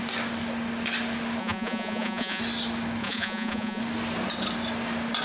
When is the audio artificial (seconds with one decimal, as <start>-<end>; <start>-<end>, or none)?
1.4-2.4; 3.0-3.8